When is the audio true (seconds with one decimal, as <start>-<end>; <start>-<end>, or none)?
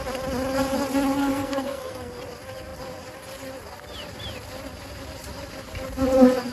0.0-1.2; 2.2-6.5